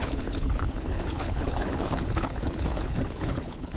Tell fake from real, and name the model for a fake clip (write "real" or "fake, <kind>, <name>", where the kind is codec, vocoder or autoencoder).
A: fake, codec, HILCodec